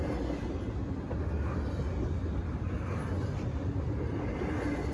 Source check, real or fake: real